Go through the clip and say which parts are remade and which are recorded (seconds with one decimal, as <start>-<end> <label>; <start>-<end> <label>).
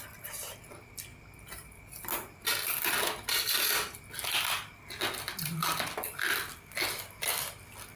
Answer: 0.0-8.0 recorded